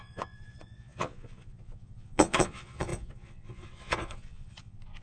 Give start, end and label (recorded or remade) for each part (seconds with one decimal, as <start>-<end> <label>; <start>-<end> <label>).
0.0-5.0 remade